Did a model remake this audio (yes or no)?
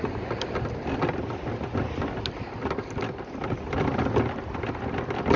no